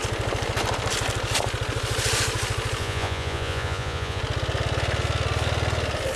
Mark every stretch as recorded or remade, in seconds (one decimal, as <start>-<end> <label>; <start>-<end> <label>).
0.0-2.8 recorded; 2.8-4.2 remade; 4.2-6.2 recorded